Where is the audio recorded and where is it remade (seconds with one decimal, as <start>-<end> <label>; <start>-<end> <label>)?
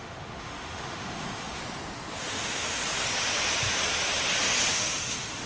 0.0-1.6 remade; 1.6-2.2 recorded; 2.2-2.8 remade; 2.8-4.7 recorded; 4.7-5.5 remade